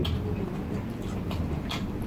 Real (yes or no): yes